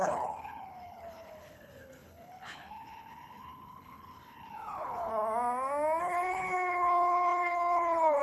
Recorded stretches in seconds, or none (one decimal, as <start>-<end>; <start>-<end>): 5.1-6.0